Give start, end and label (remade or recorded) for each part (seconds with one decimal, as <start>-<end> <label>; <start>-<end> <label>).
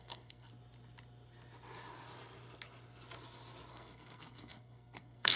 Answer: 0.0-0.5 remade; 0.5-3.7 recorded; 3.7-5.4 remade